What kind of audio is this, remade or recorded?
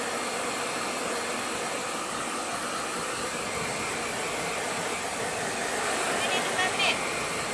recorded